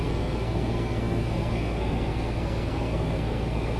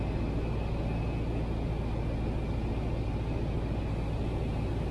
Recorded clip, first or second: second